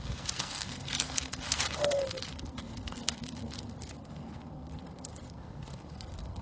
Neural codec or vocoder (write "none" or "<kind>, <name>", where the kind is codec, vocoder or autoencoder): codec, SNAC